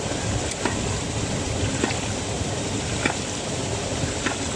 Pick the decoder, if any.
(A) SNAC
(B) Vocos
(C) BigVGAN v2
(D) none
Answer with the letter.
D